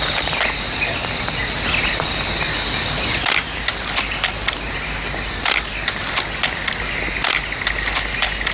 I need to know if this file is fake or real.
real